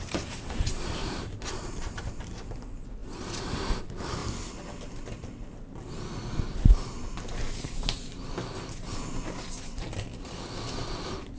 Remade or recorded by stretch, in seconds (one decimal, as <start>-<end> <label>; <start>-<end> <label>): 0.0-1.0 recorded; 1.0-2.3 remade; 2.3-11.4 recorded